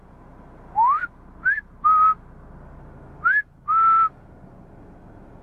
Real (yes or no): yes